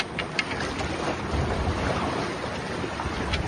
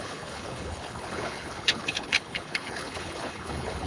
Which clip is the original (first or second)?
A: first